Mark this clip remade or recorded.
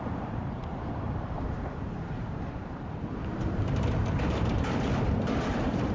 remade